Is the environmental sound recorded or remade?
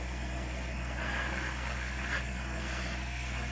remade